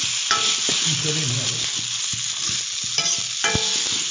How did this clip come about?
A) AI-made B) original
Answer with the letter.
B